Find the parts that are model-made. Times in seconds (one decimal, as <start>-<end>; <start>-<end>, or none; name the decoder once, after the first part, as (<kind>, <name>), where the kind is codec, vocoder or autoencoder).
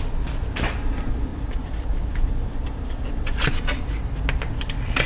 1.3-4.0 (vocoder, BigVGAN v2)